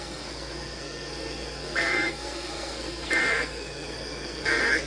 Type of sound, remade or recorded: remade